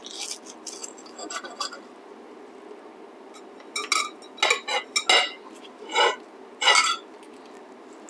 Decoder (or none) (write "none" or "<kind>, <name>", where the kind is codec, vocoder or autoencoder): none